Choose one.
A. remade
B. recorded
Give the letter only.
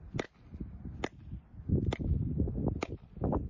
B